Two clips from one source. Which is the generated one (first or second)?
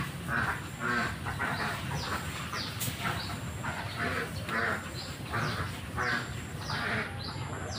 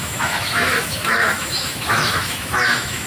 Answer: second